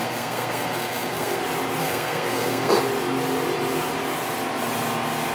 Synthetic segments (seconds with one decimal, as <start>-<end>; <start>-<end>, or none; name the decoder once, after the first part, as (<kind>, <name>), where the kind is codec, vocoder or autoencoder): 0.0-1.4 (codec, SNAC); 1.8-2.7